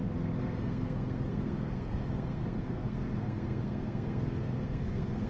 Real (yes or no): no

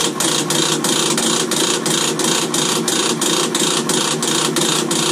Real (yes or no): yes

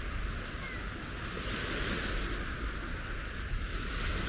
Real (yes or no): yes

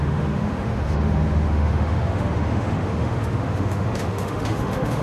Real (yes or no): no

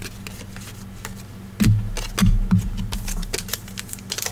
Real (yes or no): yes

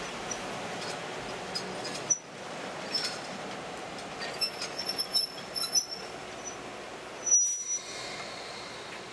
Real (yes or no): yes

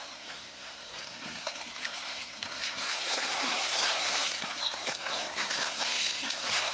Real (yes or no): no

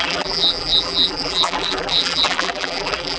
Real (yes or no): no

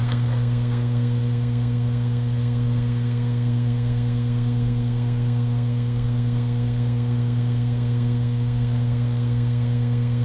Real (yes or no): no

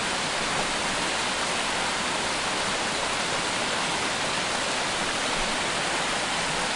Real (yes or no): yes